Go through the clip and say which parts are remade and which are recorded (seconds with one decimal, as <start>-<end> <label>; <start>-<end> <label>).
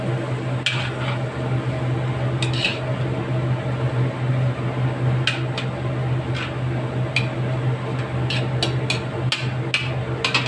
0.0-10.5 recorded